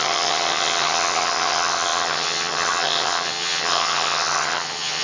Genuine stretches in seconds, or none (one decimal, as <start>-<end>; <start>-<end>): none